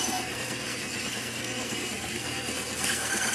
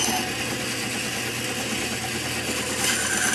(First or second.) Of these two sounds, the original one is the second